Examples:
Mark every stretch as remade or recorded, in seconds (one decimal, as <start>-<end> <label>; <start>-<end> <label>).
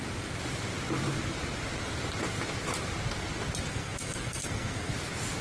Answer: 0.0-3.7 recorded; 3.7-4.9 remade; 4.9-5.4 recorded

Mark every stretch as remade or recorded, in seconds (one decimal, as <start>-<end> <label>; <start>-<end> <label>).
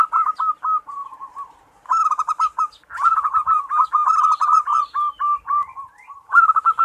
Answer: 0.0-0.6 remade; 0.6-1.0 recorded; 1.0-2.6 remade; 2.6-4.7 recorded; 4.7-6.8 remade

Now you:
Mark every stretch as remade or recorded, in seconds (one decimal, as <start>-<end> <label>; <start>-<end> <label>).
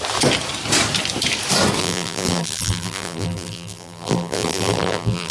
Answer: 0.0-1.8 recorded; 1.8-5.3 remade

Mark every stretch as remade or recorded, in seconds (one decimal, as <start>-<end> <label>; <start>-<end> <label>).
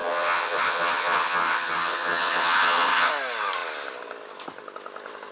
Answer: 0.0-3.1 remade; 3.1-5.3 recorded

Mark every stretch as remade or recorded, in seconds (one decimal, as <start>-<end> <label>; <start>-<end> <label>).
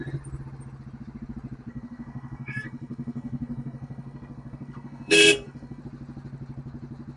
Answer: 0.0-1.7 recorded; 1.7-5.8 remade; 5.8-7.2 recorded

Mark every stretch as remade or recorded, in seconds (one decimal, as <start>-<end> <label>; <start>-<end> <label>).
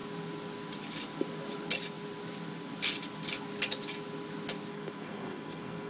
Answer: 0.0-4.7 recorded; 4.7-5.9 remade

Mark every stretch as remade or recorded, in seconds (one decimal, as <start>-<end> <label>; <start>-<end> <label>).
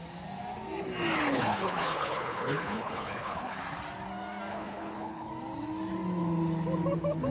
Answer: 0.0-1.3 recorded; 1.3-3.6 remade; 3.6-4.5 recorded; 4.5-5.3 remade; 5.3-7.3 recorded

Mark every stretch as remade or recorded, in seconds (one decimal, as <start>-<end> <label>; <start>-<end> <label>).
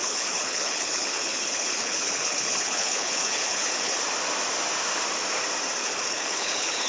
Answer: 0.0-4.0 remade; 4.0-5.8 recorded; 5.8-6.9 remade